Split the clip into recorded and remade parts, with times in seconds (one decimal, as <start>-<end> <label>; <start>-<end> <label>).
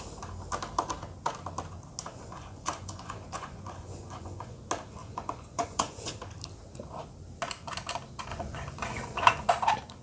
0.0-2.1 recorded; 2.1-4.6 remade; 4.6-5.0 recorded; 5.0-6.1 remade; 6.1-8.3 recorded; 8.3-9.5 remade; 9.5-10.0 recorded